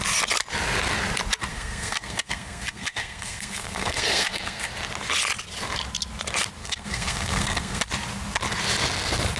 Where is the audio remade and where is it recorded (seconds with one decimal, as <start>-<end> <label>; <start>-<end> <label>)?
0.0-1.5 recorded; 1.5-4.7 remade; 4.7-6.6 recorded; 6.6-7.8 remade; 7.8-9.4 recorded